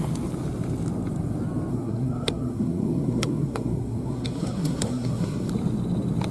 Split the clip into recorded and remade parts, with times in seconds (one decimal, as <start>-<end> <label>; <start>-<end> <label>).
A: 0.0-1.7 recorded; 1.7-5.5 remade; 5.5-6.3 recorded